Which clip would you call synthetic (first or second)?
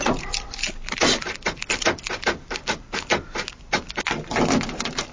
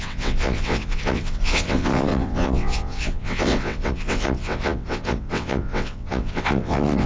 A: second